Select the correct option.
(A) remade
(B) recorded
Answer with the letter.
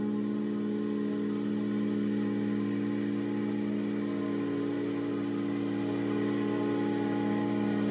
B